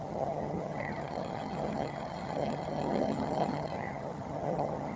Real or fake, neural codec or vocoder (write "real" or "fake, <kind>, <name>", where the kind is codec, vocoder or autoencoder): fake, vocoder, HiFi-GAN